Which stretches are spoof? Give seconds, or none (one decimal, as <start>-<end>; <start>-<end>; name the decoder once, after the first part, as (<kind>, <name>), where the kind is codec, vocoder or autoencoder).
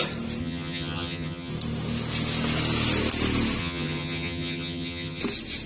0.4-1.5 (vocoder, HiFi-GAN); 3.6-5.2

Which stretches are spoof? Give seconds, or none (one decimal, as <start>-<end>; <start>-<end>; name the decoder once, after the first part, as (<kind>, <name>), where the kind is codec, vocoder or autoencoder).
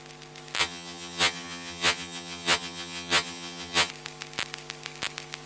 0.6-3.9 (vocoder, HiFi-GAN)